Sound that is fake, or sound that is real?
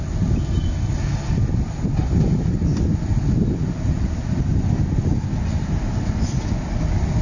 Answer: real